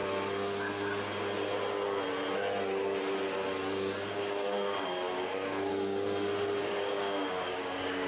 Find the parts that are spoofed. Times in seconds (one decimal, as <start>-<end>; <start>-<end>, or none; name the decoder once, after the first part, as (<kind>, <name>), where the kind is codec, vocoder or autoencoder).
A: 4.1-5.7 (codec, DAC); 6.6-8.1